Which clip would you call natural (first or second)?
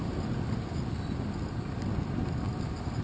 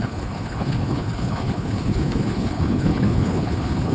first